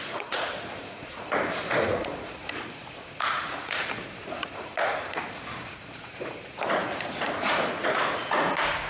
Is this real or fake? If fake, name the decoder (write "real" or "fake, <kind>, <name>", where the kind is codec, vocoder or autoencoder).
fake, vocoder, Vocos